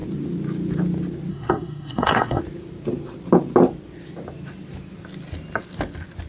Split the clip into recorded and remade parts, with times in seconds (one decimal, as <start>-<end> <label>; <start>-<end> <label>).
0.0-1.3 recorded; 1.3-2.4 remade; 2.4-6.3 recorded